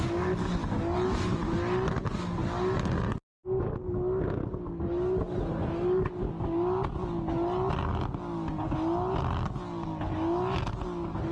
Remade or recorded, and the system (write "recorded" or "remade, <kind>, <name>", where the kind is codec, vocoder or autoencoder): recorded